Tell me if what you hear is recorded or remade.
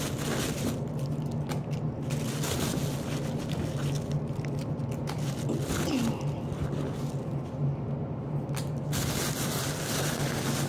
recorded